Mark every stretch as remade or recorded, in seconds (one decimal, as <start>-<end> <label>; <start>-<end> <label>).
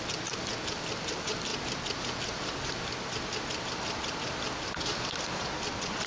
0.0-6.1 recorded